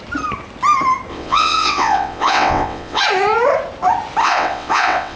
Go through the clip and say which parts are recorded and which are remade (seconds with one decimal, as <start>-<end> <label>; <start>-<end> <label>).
0.0-1.1 recorded; 1.1-3.0 remade; 3.0-4.2 recorded; 4.2-5.2 remade